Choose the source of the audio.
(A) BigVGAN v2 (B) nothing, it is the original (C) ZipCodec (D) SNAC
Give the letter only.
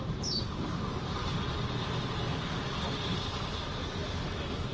B